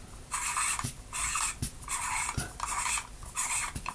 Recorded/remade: recorded